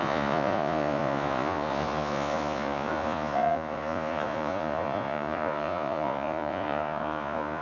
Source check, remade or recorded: remade